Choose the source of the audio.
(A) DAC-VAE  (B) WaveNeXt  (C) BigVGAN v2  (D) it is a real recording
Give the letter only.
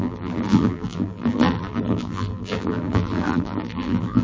C